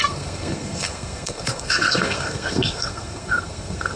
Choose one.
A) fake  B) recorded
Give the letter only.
A